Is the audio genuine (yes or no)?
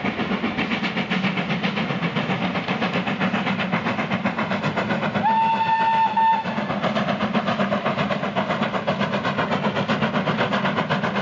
yes